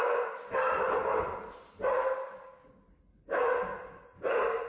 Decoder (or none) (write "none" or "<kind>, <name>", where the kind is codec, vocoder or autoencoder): none